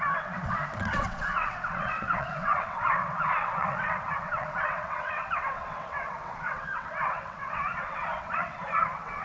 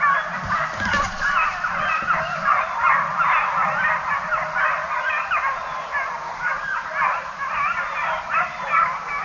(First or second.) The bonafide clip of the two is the second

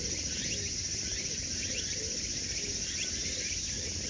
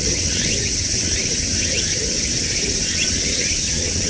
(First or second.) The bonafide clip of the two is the first